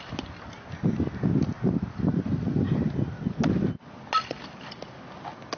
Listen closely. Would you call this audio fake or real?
real